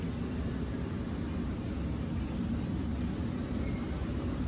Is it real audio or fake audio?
real